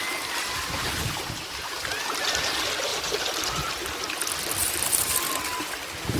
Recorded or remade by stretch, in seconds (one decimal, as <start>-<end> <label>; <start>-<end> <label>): 0.0-2.9 recorded; 2.9-3.7 remade; 3.7-4.6 recorded; 4.6-5.3 remade; 5.3-6.2 recorded